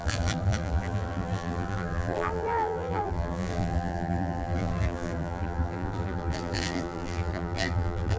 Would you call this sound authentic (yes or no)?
no